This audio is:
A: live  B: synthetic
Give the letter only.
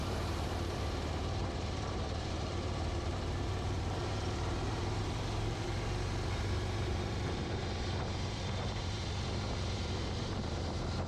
B